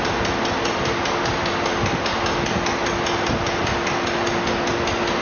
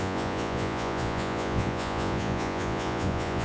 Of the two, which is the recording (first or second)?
first